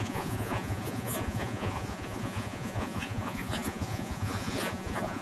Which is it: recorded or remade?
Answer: remade